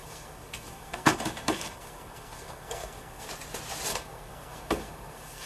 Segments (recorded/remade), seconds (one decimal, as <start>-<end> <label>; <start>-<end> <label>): 0.0-3.3 remade; 3.3-3.9 recorded; 3.9-5.5 remade